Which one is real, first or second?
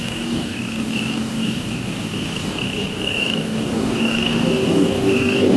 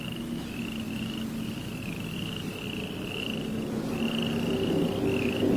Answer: second